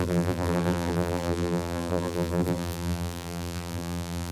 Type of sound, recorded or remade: remade